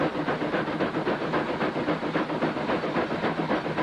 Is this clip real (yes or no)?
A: yes